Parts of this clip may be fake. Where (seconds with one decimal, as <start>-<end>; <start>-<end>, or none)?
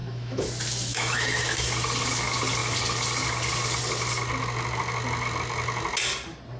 0.0-0.5; 0.9-1.7